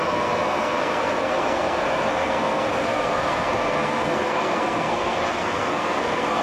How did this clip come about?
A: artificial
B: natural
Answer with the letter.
A